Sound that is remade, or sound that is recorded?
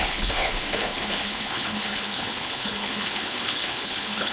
remade